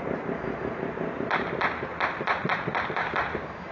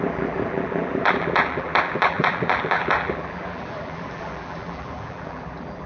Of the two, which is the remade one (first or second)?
second